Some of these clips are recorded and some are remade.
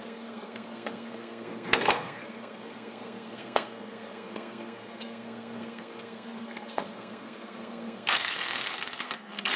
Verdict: remade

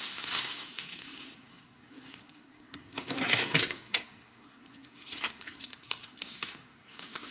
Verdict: remade